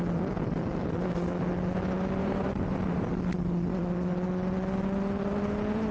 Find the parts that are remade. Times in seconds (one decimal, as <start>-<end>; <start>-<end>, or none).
2.2-3.1